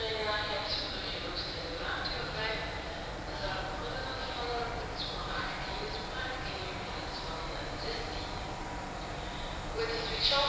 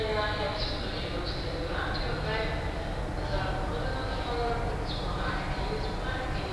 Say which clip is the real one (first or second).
second